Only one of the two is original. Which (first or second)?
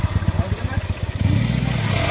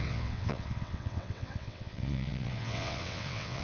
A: first